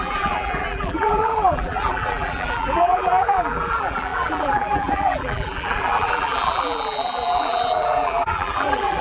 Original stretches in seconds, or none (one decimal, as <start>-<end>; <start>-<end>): none